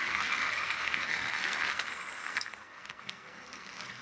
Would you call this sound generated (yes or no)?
yes